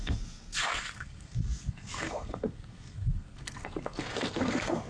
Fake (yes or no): yes